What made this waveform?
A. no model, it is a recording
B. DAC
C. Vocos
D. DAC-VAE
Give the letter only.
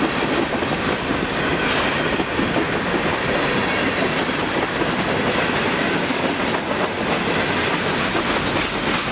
A